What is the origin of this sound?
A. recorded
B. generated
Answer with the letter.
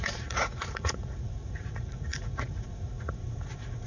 B